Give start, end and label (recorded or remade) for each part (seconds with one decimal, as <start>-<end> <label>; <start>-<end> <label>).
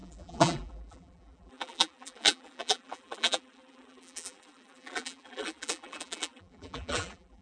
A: 0.0-7.4 remade